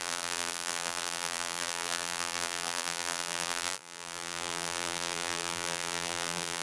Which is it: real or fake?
fake